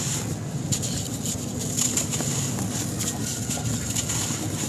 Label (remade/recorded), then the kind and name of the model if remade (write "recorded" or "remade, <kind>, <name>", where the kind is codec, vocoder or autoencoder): recorded